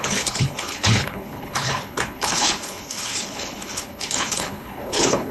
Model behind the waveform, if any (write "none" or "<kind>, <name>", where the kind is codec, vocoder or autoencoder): codec, HILCodec